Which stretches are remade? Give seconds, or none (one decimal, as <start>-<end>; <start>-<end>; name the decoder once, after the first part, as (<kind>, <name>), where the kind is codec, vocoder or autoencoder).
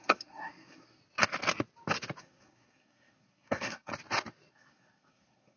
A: 0.0-1.0 (codec, SNAC); 2.2-3.9; 4.5-5.6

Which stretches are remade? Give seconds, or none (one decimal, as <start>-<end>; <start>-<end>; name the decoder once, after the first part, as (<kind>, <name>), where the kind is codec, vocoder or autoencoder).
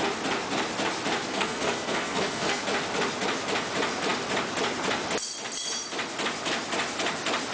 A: 1.3-2.6 (codec, SNAC)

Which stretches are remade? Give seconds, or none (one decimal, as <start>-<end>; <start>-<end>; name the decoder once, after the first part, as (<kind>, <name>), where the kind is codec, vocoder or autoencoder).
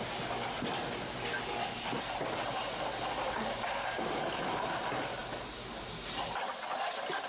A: none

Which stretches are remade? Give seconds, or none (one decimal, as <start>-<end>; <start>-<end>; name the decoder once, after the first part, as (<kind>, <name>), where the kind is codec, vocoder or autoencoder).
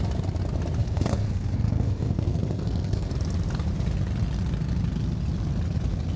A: 0.8-3.1 (codec, SNAC)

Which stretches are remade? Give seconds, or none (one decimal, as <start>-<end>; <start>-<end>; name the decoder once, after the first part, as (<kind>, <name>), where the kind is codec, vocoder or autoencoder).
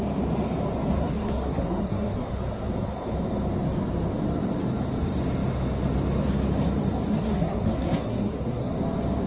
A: 1.0-2.3 (codec, SNAC); 7.1-8.7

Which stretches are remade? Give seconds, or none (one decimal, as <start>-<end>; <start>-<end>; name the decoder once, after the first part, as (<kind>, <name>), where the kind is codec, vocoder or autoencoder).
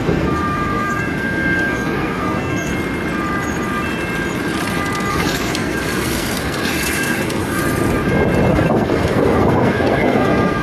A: 0.0-2.7 (codec, SNAC); 5.1-7.6; 8.5-10.6